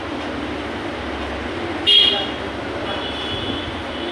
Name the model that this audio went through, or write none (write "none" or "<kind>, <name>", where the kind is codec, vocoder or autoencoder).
none